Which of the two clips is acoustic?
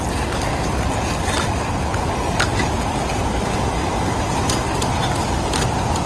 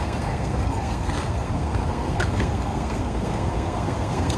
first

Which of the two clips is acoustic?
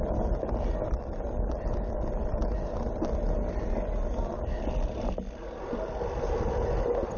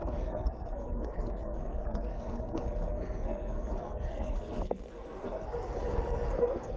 first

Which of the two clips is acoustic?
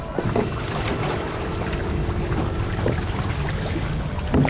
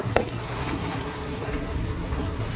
first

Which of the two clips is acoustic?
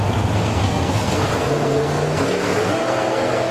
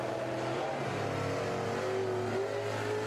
second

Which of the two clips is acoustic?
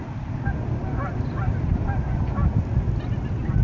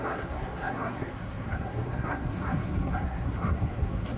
first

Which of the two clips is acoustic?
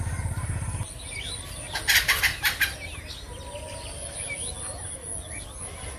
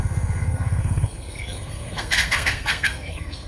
first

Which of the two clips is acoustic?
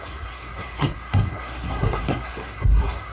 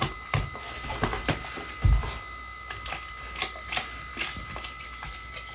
second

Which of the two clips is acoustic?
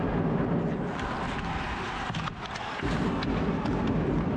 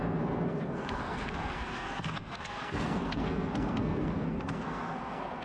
first